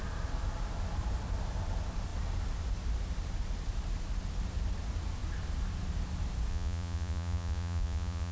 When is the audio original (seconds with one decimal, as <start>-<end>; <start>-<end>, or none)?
0.0-6.5